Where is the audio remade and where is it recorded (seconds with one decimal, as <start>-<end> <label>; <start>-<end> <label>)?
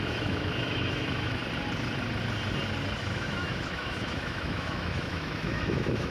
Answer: 0.0-1.4 remade; 1.4-3.0 recorded; 3.0-6.1 remade